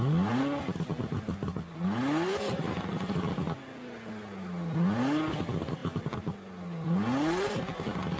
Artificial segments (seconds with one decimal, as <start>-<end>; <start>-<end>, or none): none